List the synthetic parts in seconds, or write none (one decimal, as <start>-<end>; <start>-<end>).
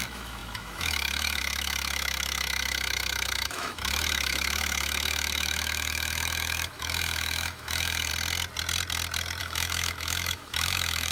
0.0-8.1; 9.4-11.1